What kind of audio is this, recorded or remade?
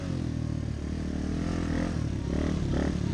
recorded